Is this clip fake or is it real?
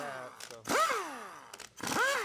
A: real